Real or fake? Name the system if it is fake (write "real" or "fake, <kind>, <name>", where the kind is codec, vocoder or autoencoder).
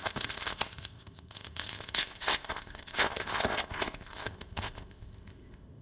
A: fake, codec, ZipCodec